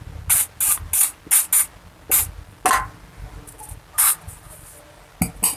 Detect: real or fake real